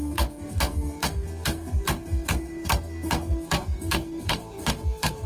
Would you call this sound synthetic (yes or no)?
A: yes